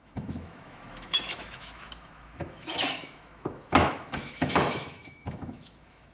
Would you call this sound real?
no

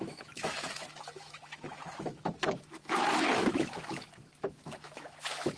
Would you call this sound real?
no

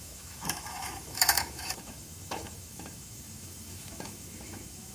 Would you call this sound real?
no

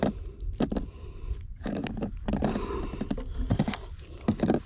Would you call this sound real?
yes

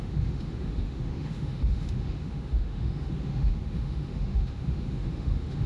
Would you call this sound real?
no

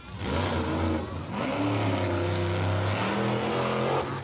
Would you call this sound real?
yes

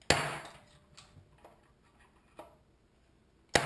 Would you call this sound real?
yes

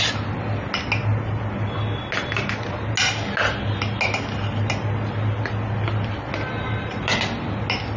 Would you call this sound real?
yes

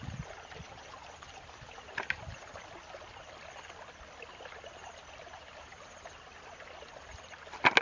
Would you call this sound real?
yes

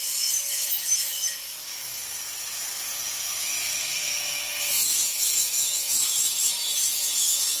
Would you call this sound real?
no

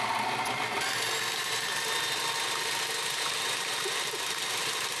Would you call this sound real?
yes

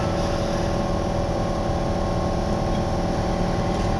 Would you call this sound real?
yes